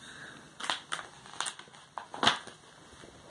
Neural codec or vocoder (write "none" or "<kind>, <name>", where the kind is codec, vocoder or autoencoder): none